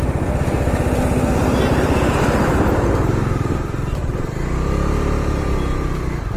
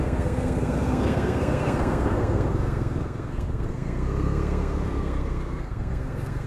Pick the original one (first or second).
first